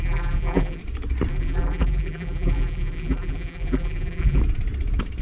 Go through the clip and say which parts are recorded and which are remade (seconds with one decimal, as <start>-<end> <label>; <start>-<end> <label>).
0.0-0.8 remade; 0.8-1.3 recorded; 1.3-4.4 remade; 4.4-5.2 recorded